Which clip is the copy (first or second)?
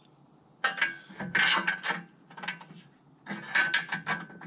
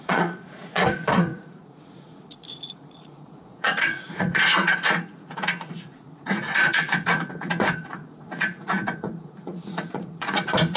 second